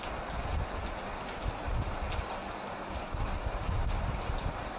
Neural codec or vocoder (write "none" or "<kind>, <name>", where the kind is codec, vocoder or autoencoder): none